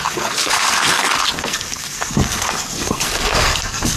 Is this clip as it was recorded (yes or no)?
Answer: no